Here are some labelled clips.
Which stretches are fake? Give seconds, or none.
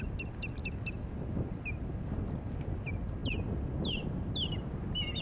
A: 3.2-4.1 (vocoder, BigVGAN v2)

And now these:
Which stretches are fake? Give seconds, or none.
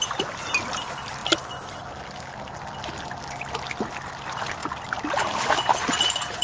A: none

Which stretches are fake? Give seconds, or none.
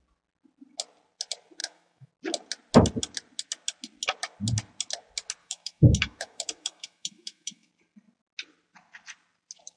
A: 1.6-2.1 (autoencoder, DAC-VAE); 5.4-7.7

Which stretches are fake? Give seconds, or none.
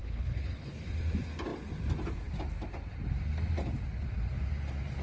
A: 0.0-0.9 (codec, HILCodec)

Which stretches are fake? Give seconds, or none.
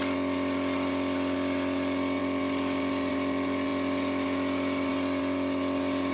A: none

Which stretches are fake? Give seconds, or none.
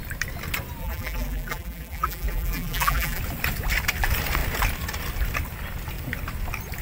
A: 0.8-3.2 (vocoder, BigVGAN v2)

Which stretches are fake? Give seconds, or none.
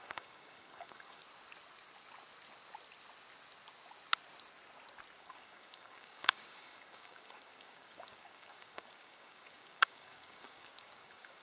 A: 0.0-1.2 (codec, DAC); 5.2-11.4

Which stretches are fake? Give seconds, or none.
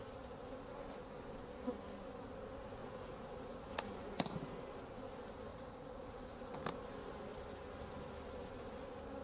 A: 2.8-4.5 (vocoder, Vocos); 5.5-6.5